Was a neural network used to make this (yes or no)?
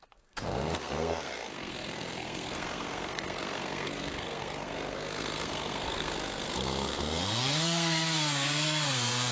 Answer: yes